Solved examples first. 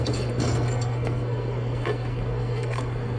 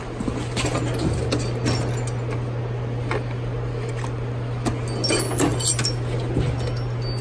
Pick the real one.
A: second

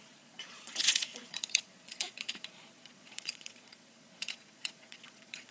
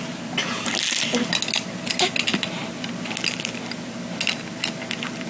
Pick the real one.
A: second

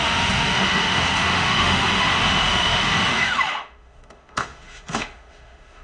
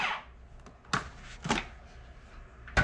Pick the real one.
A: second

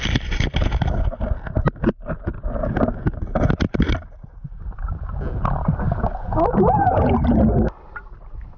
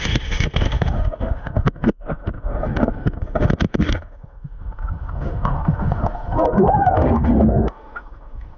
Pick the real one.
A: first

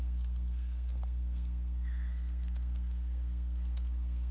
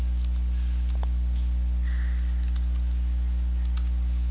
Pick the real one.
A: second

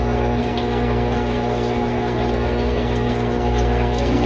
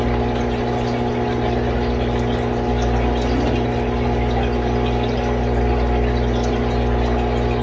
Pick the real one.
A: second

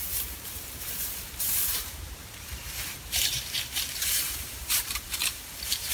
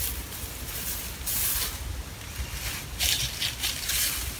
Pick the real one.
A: second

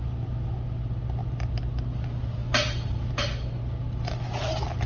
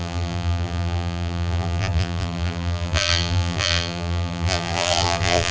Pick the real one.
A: first